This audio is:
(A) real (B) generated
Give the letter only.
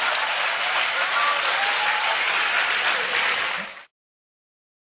B